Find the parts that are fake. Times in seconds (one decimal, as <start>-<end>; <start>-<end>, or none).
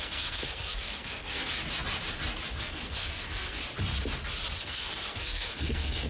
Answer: 0.0-1.6; 2.6-3.6; 4.6-6.1